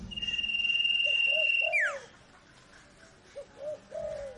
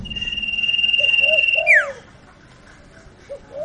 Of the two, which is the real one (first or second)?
first